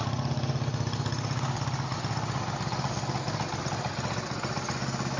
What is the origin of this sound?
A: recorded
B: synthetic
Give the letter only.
A